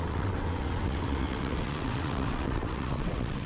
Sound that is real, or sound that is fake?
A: fake